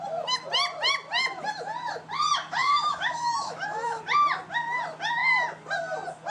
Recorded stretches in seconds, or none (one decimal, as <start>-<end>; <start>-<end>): 0.0-2.6; 4.0-6.3